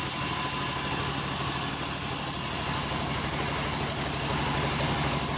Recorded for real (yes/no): yes